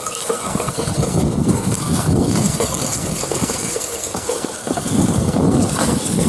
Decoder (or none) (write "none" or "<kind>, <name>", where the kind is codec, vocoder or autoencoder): codec, SNAC